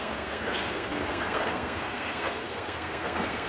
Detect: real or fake fake